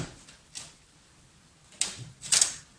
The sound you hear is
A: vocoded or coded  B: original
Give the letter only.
B